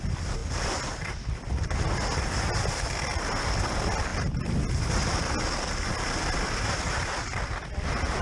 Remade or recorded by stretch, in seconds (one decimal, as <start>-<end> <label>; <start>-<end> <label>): 0.0-8.2 recorded